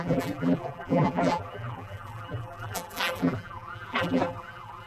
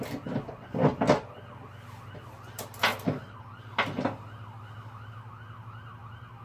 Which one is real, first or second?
second